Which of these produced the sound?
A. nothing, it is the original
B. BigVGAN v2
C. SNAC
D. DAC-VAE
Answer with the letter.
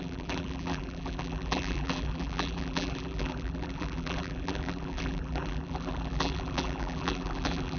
B